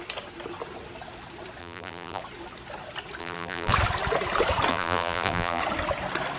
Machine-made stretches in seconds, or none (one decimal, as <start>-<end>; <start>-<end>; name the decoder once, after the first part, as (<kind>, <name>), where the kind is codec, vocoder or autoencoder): 1.6-2.2 (vocoder, BigVGAN v2); 3.2-3.7; 4.7-5.6